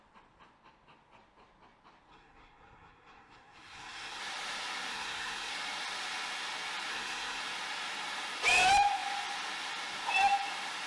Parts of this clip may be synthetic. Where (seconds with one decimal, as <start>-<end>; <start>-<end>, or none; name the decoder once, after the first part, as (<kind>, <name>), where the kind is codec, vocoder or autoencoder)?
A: 2.1-4.2 (codec, SNAC); 4.9-5.5; 6.9-7.4